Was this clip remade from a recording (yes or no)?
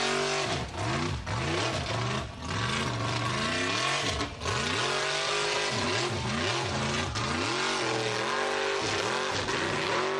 no